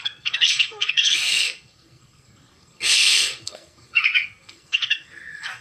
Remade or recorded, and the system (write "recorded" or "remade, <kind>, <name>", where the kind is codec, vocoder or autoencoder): remade, codec, SNAC